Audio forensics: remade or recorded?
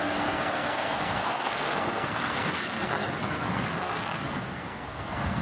remade